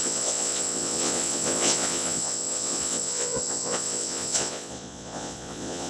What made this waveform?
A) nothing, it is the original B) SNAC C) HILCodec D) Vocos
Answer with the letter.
D